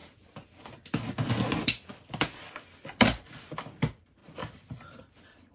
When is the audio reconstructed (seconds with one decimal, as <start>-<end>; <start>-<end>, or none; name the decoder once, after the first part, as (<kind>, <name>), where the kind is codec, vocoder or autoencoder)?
4.2-5.5 (vocoder, BigVGAN v2)